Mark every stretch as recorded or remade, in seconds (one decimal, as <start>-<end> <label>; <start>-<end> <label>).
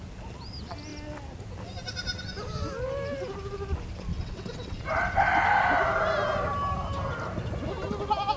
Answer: 0.0-4.1 recorded; 4.1-4.8 remade; 4.8-8.4 recorded